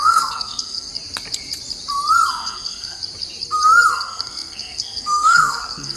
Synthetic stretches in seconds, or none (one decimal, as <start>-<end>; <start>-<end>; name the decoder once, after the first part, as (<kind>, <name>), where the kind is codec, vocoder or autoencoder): 0.0-0.9 (codec, SNAC); 2.3-3.0; 3.9-6.0